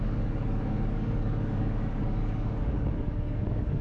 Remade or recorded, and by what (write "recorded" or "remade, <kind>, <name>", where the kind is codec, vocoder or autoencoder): remade, codec, DAC